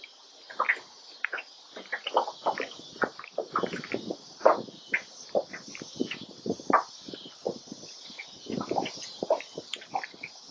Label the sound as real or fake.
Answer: real